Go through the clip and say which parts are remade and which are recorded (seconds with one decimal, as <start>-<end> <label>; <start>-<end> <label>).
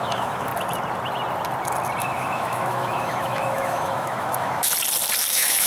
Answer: 0.0-0.5 remade; 0.5-2.0 recorded; 2.0-4.7 remade; 4.7-5.3 recorded; 5.3-5.7 remade